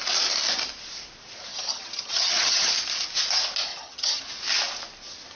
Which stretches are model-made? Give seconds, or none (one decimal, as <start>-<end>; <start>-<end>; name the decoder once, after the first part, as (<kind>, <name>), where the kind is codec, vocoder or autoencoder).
1.5-2.7 (vocoder, HiFi-GAN); 3.7-4.2